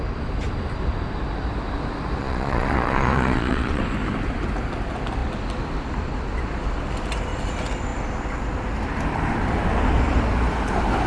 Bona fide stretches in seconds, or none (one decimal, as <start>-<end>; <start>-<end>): 0.0-2.2; 3.8-11.1